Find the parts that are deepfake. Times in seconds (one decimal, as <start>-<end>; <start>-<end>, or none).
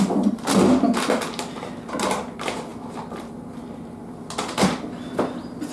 none